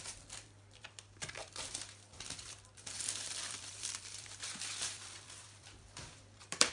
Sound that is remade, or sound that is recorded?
remade